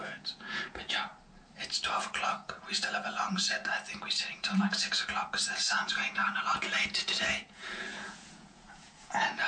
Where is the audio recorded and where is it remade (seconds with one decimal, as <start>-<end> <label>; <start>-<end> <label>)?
0.0-1.1 remade; 1.1-1.9 recorded; 1.9-3.6 remade; 3.6-4.3 recorded; 4.3-9.5 remade